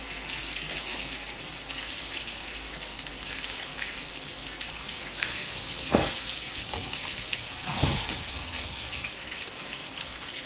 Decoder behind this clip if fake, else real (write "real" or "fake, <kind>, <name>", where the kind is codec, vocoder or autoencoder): fake, codec, SNAC